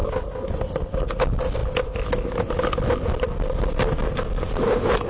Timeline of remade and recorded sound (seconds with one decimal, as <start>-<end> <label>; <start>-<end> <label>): 0.0-5.1 recorded